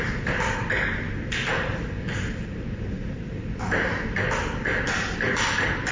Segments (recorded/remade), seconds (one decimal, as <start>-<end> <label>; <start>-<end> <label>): 0.0-5.9 recorded